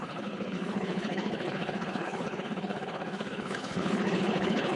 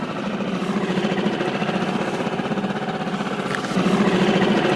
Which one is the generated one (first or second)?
first